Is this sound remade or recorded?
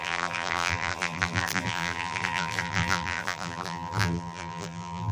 remade